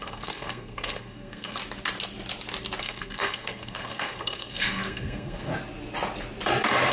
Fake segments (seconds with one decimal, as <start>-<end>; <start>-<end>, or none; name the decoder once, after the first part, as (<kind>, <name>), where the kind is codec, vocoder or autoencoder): 0.0-1.6 (codec, SNAC); 2.8-5.5